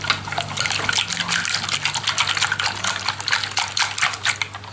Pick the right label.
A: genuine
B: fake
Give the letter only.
A